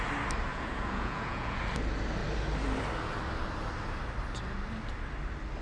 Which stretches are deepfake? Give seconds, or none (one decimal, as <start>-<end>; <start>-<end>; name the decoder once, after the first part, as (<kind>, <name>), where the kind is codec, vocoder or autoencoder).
0.5-1.6 (vocoder, Vocos)